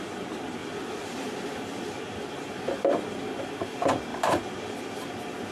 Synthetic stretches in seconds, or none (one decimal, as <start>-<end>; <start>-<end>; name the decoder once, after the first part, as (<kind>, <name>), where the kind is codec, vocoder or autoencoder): 0.0-5.5 (vocoder, BigVGAN v2)